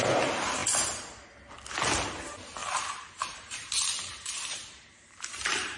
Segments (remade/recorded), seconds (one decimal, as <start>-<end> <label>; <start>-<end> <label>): 0.0-2.6 recorded; 2.6-5.8 remade

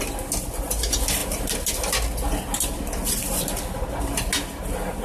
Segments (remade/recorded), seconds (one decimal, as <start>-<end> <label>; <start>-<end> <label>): 0.0-5.0 recorded